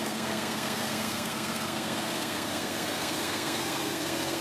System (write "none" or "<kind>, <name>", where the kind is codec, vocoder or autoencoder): codec, SNAC